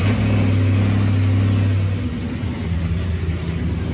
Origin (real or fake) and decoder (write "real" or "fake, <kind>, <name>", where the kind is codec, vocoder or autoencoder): real